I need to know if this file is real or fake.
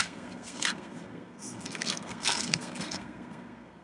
fake